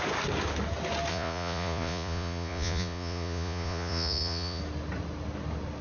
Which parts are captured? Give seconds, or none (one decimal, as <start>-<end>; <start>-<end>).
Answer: 0.0-1.1; 4.6-5.8